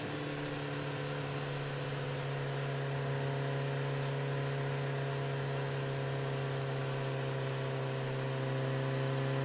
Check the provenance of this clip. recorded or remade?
recorded